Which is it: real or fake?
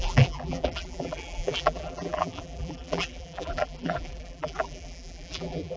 fake